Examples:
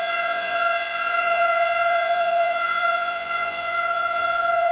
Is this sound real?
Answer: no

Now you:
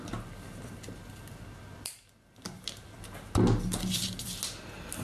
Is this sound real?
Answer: yes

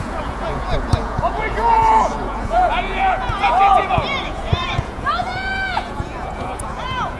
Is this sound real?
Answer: no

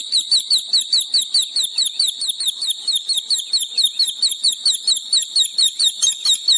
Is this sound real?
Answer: yes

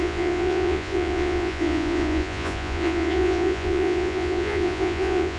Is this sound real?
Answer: no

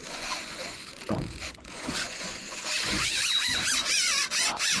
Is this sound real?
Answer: no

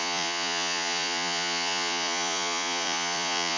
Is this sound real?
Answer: no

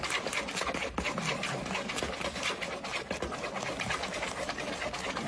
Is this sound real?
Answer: yes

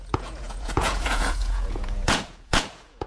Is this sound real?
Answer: no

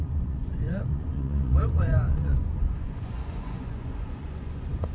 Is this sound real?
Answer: no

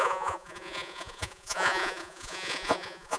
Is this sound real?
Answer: no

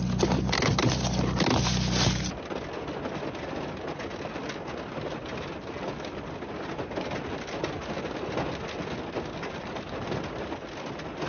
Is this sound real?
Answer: yes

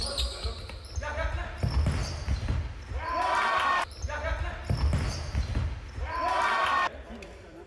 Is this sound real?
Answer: yes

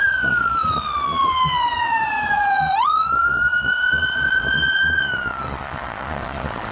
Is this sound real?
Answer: no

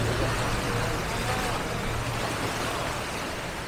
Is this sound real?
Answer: yes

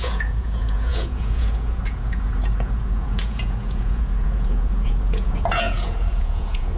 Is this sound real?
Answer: no